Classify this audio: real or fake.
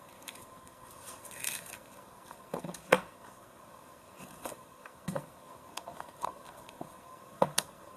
fake